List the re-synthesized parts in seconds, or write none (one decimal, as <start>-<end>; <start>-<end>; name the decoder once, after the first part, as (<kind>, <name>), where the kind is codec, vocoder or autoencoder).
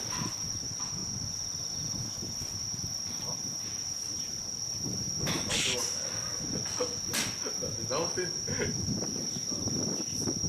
0.0-1.0 (vocoder, BigVGAN v2); 1.7-5.8; 9.2-9.6